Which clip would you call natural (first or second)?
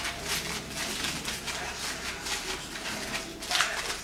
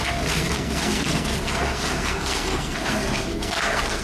first